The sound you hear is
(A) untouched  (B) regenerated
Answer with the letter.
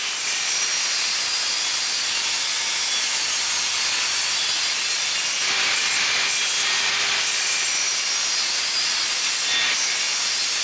A